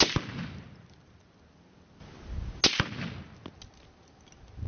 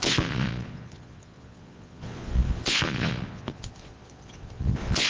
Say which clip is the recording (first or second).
first